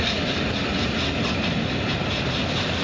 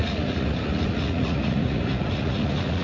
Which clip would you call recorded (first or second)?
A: first